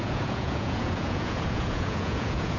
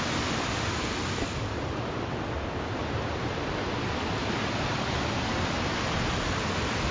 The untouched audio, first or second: second